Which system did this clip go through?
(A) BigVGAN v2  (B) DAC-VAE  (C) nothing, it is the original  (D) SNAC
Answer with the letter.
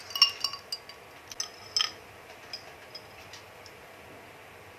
C